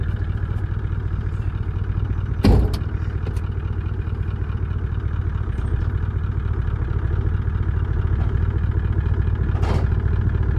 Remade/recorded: recorded